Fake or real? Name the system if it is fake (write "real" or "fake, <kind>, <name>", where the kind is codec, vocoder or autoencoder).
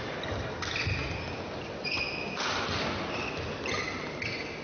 real